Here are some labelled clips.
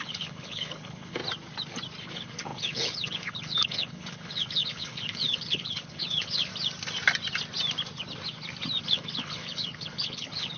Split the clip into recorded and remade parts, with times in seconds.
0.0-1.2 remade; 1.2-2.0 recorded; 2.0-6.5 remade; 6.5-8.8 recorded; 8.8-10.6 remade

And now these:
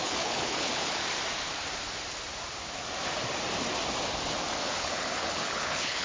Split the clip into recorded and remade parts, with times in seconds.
0.0-1.0 remade; 1.0-4.6 recorded; 4.6-6.0 remade

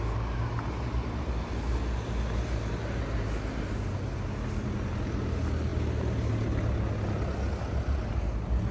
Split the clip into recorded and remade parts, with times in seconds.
0.0-8.7 recorded

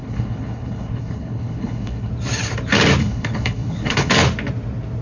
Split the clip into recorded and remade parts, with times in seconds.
0.0-2.1 remade; 2.1-3.0 recorded; 3.0-4.1 remade; 4.1-5.0 recorded

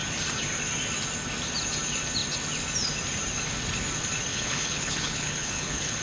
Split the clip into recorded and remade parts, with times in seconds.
0.0-4.3 recorded; 4.3-6.0 remade

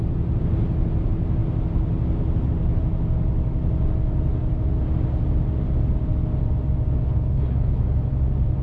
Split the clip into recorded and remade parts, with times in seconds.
0.0-7.0 recorded; 7.0-7.8 remade; 7.8-8.6 recorded

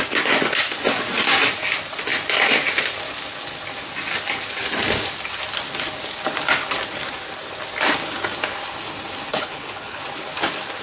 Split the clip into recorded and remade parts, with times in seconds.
0.0-9.3 recorded; 9.3-10.0 remade; 10.0-10.8 recorded